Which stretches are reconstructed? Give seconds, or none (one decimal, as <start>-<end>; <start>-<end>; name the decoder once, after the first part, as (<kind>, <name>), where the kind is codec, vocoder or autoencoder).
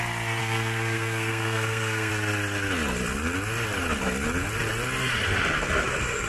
0.4-2.1 (codec, SNAC)